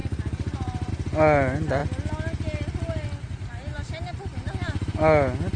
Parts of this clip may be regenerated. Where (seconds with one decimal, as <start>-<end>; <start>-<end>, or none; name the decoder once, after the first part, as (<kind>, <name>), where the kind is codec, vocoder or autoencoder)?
0.0-0.9 (vocoder, BigVGAN v2)